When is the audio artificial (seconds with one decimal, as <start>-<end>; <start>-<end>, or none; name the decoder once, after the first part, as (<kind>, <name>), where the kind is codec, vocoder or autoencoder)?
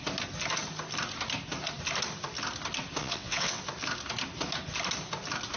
3.0-3.6 (vocoder, WaveNeXt)